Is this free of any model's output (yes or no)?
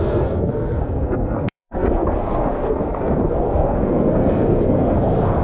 no